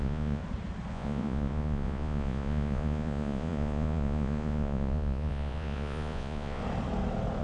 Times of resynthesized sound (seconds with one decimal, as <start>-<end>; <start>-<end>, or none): 0.0-0.4; 0.9-6.6